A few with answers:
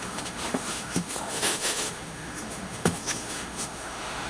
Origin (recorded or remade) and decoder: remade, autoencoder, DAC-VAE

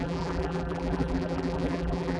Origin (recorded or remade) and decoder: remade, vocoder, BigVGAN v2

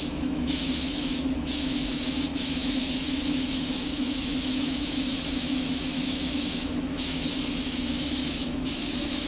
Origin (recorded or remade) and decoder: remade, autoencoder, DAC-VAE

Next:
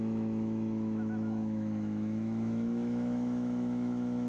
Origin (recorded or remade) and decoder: remade, autoencoder, DAC-VAE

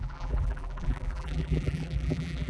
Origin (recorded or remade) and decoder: remade, vocoder, BigVGAN v2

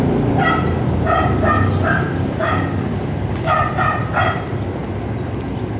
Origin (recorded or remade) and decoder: recorded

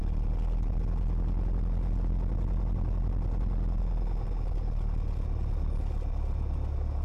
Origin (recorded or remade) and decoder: recorded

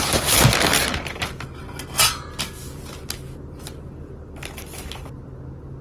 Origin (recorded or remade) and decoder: recorded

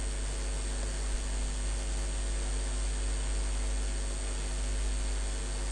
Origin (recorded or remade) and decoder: recorded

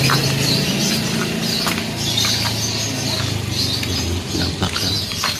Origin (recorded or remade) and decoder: recorded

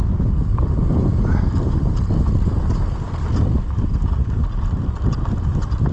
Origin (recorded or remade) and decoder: recorded